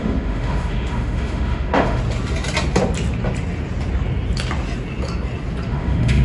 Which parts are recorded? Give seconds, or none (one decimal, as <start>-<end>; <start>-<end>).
2.0-5.7